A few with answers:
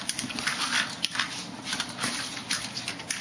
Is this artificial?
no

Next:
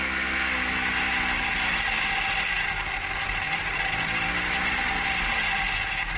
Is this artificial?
no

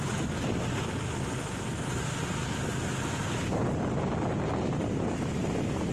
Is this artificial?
no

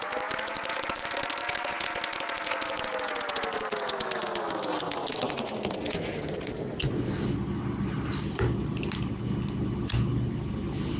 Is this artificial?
no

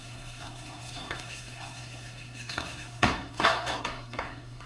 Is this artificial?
yes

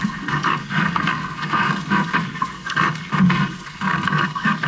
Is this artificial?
yes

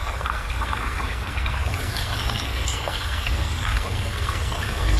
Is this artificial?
yes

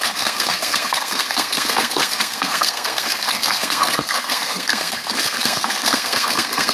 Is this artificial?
yes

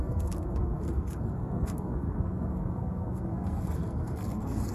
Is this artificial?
yes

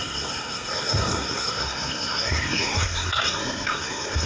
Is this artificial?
yes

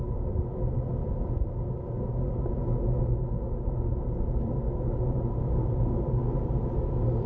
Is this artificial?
no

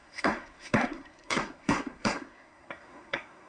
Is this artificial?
yes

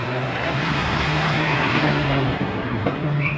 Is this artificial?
yes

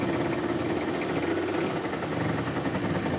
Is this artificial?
no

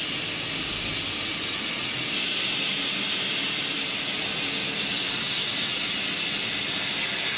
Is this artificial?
no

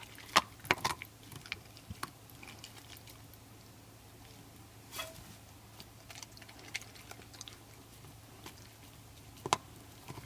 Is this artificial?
no